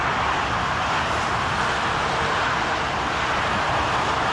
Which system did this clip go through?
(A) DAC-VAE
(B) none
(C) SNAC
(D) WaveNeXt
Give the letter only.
B